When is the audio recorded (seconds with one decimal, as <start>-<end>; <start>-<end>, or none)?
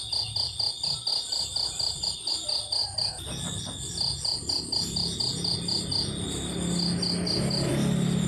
0.0-1.1; 2.3-8.3